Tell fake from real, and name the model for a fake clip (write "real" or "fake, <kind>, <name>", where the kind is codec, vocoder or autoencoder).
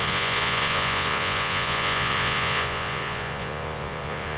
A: fake, vocoder, Vocos